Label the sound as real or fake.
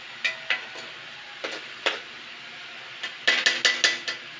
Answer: real